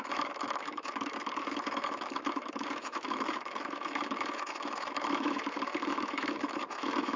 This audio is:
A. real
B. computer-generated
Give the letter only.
B